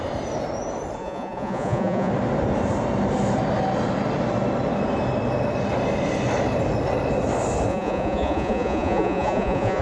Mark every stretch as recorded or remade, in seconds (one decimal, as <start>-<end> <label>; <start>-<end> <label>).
0.0-1.0 recorded; 1.0-2.1 remade; 2.1-7.7 recorded; 7.7-9.8 remade